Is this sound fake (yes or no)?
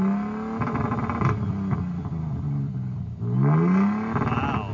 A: no